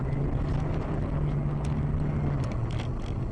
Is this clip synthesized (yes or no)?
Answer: no